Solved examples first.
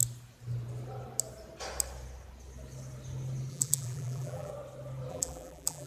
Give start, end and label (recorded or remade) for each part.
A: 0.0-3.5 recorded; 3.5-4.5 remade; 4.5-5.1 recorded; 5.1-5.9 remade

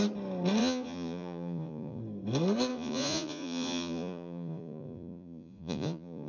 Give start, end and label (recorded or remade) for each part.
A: 0.0-0.6 recorded; 0.6-2.0 remade; 2.0-2.7 recorded; 2.7-6.3 remade

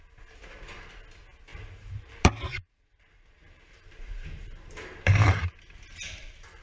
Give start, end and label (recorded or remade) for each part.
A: 0.0-1.5 recorded; 1.5-5.5 remade; 5.5-6.6 recorded

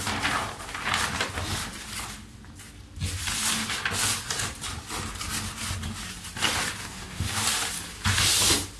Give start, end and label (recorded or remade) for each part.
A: 0.0-6.8 recorded; 6.8-7.4 remade; 7.4-8.8 recorded

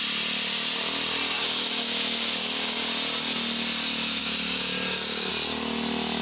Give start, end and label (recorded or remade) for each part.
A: 0.0-1.4 recorded; 1.4-2.9 remade; 2.9-4.2 recorded; 4.2-5.3 remade; 5.3-6.2 recorded

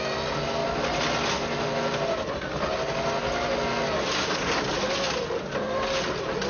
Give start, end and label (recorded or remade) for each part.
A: 0.0-6.5 recorded

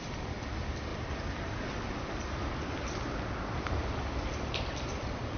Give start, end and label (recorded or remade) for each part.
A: 0.0-5.4 recorded

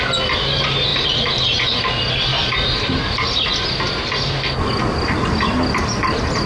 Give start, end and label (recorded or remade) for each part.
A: 0.0-0.9 recorded; 0.9-1.8 remade; 1.8-2.3 recorded; 2.3-3.4 remade; 3.4-6.5 recorded